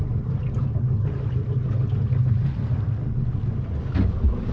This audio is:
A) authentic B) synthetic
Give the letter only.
A